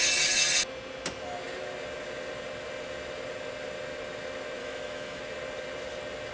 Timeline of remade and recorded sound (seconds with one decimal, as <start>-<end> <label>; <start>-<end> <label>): 0.0-4.6 recorded; 4.6-5.2 remade; 5.2-6.3 recorded